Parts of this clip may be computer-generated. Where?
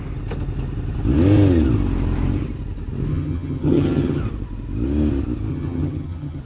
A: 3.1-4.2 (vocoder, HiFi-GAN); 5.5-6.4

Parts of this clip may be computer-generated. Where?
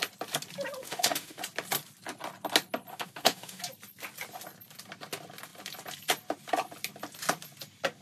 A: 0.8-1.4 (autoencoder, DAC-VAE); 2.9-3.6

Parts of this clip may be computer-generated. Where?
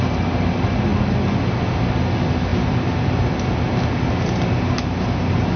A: none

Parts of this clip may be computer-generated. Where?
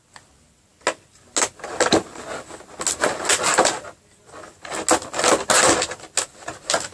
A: none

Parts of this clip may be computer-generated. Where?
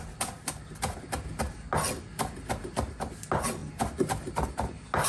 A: none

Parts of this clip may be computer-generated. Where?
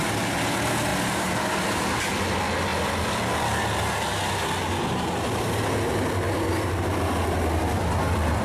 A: 0.9-2.0 (vocoder, BigVGAN v2)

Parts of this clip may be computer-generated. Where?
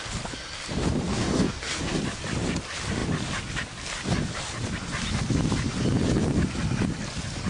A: 1.1-2.0 (codec, DAC)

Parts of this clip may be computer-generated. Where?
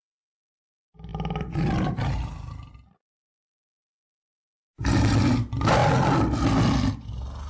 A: none